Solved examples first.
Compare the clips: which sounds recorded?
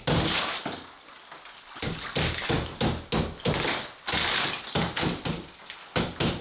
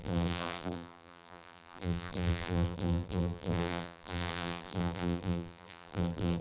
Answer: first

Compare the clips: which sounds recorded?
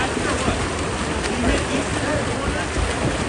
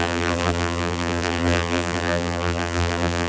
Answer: first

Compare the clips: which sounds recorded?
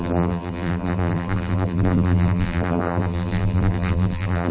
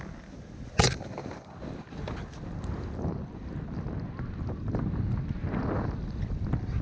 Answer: second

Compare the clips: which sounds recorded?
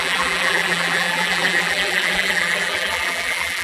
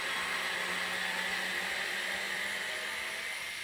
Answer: second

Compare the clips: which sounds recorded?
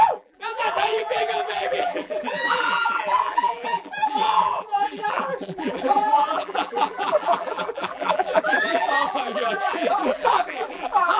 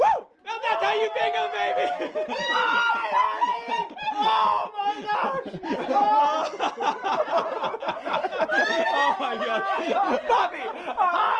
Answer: second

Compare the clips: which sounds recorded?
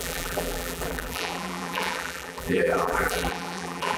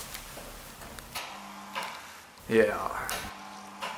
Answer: second